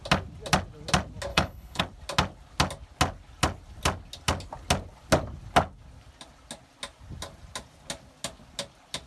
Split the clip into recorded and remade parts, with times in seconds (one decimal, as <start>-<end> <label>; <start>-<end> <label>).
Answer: 0.0-1.3 recorded; 1.3-1.8 remade; 1.8-9.1 recorded